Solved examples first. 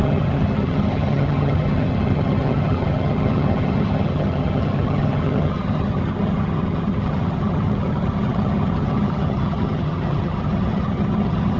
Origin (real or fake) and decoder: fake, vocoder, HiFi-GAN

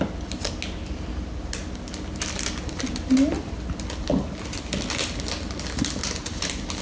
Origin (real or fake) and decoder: real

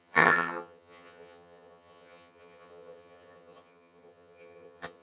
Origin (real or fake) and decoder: fake, vocoder, HiFi-GAN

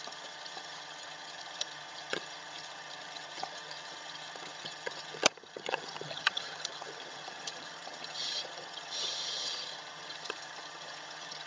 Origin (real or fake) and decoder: fake, vocoder, HiFi-GAN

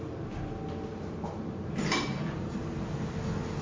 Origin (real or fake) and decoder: real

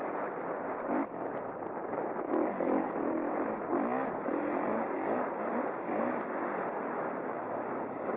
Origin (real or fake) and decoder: real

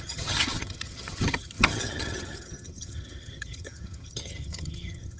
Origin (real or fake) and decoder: fake, vocoder, HiFi-GAN